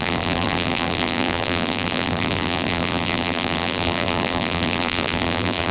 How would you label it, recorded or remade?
remade